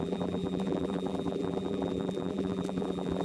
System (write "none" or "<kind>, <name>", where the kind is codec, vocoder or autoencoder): vocoder, BigVGAN v2